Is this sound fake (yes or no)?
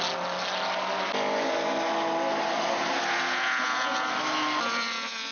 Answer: no